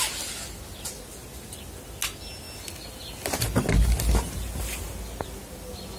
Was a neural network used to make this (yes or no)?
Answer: no